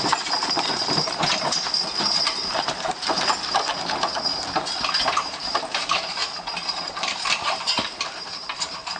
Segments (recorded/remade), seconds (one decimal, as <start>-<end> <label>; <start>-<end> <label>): 0.0-1.2 remade; 1.2-5.2 recorded; 5.2-6.2 remade; 6.2-6.8 recorded; 6.8-9.0 remade